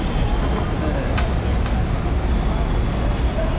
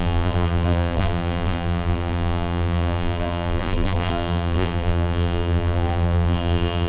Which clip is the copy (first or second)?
second